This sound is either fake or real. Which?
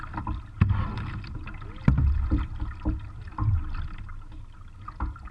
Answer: real